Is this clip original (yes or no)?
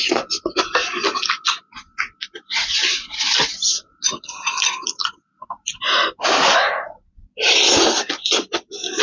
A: yes